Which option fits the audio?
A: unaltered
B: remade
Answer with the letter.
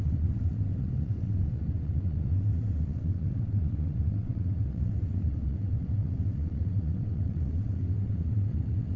B